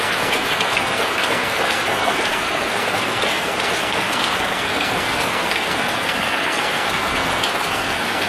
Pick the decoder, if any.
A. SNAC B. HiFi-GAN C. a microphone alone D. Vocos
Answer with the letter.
A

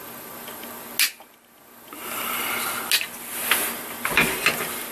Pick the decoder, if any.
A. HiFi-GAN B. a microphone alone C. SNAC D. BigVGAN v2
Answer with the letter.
B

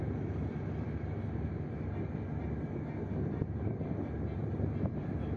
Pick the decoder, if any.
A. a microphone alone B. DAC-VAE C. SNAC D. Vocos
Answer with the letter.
A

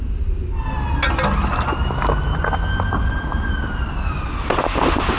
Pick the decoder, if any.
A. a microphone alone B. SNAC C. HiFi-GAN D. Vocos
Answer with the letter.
A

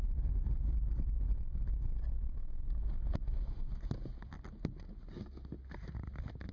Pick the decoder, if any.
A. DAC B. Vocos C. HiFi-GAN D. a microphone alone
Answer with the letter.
D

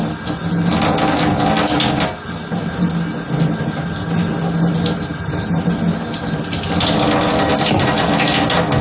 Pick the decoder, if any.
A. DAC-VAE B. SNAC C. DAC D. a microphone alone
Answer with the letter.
D